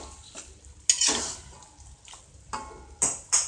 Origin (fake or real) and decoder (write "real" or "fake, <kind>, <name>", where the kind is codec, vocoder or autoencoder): real